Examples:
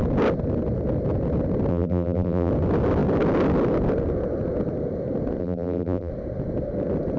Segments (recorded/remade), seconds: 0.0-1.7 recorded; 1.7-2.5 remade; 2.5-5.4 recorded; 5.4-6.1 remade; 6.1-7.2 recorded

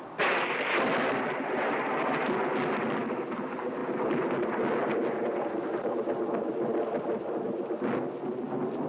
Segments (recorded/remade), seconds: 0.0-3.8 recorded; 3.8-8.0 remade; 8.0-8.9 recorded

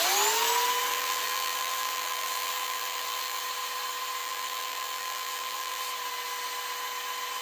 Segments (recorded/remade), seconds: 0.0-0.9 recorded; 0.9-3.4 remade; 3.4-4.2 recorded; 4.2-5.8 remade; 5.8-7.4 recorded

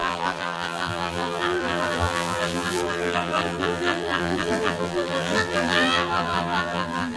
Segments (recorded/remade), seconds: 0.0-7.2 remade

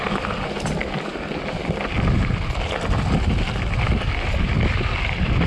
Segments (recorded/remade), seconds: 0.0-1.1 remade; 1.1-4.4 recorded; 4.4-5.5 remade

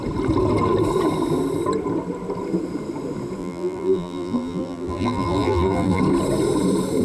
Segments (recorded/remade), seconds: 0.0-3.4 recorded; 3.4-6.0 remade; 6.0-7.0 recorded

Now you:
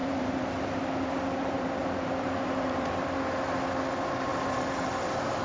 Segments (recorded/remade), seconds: 0.0-3.2 remade; 3.2-4.3 recorded; 4.3-5.4 remade